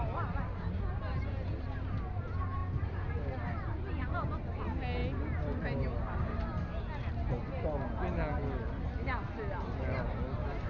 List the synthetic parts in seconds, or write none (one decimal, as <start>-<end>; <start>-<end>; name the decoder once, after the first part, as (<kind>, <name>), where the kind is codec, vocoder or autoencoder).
none